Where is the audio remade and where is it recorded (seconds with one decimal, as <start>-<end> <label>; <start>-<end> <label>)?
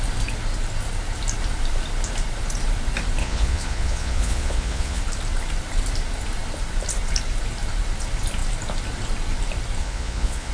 0.0-3.2 recorded; 3.2-5.0 remade; 5.0-9.8 recorded; 9.8-10.5 remade